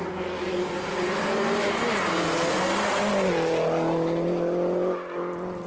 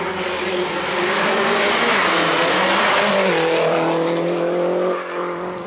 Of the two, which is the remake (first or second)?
second